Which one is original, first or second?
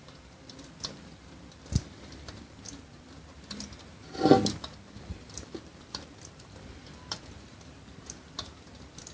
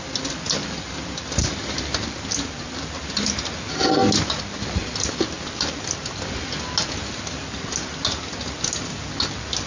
second